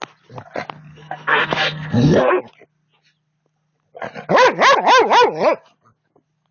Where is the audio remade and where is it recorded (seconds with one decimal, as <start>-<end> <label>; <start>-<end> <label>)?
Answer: 0.0-0.9 recorded; 0.9-2.4 remade; 2.4-6.5 recorded